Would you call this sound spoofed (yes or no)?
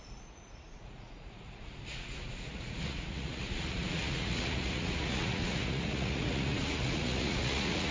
yes